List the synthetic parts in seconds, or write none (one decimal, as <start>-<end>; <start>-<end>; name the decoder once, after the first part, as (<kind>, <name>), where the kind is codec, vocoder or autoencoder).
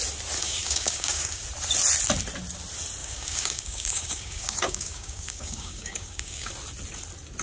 0.4-1.4 (codec, DAC); 3.0-6.5